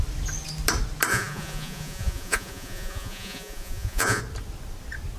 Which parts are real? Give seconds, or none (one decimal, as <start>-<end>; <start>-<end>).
0.0-1.1; 4.2-5.2